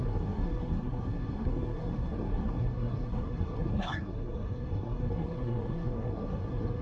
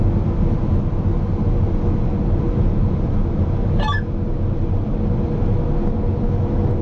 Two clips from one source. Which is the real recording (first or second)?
second